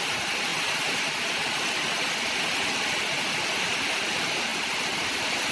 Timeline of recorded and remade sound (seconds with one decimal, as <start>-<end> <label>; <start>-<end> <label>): 0.0-5.5 recorded